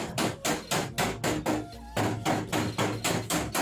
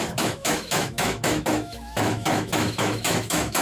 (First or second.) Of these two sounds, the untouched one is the first